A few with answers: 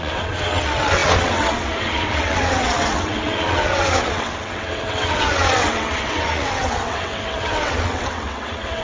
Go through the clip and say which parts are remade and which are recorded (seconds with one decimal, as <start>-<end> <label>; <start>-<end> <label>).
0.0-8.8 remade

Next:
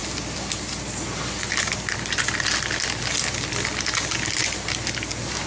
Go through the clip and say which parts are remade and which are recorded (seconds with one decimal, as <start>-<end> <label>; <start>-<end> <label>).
0.0-5.5 recorded

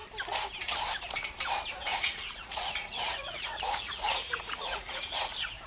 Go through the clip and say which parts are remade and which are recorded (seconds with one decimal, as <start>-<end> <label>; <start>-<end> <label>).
0.0-1.9 recorded; 1.9-5.3 remade; 5.3-5.7 recorded